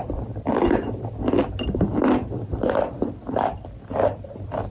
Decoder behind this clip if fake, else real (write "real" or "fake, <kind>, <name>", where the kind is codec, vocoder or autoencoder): fake, vocoder, BigVGAN v2